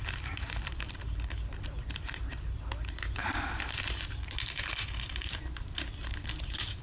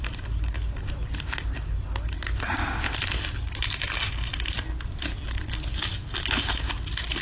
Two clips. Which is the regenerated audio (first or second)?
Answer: first